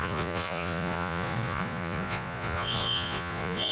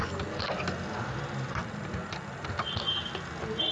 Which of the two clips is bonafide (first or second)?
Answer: second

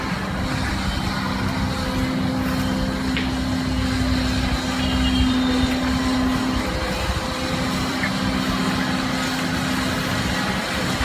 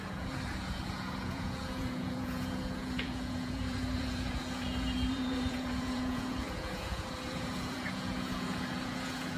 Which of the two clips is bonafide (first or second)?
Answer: first